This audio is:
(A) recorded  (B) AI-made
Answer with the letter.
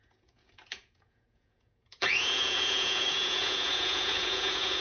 B